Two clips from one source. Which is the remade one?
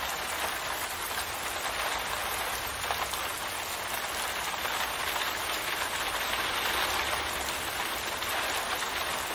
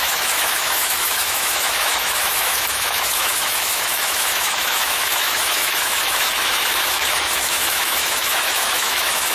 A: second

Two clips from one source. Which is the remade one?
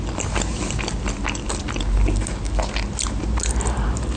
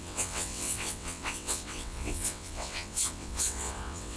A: second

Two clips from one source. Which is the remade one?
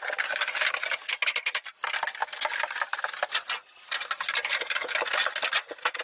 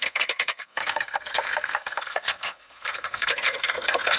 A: second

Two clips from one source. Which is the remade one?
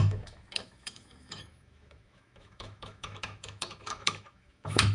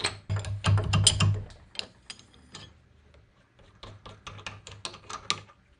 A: first